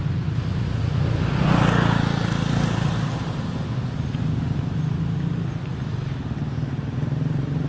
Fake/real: real